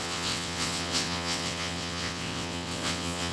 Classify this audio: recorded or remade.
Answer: remade